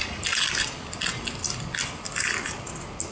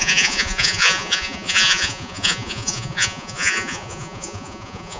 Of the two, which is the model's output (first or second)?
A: second